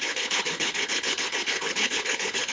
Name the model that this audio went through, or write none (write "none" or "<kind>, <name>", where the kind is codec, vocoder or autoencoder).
codec, HILCodec